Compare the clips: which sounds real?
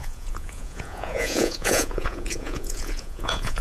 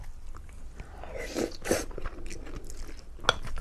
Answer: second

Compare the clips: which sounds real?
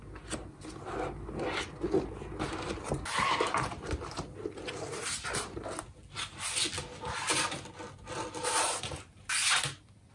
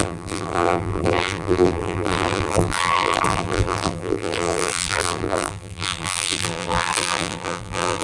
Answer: first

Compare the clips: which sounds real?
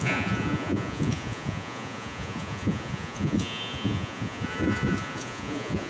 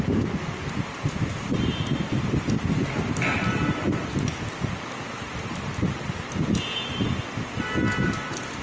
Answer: second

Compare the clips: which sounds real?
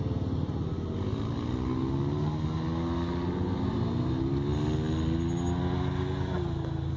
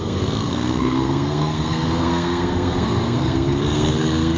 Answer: first